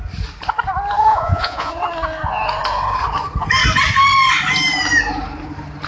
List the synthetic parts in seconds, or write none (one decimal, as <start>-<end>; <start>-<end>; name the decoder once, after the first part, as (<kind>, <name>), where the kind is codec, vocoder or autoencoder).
1.1-1.7 (vocoder, Vocos)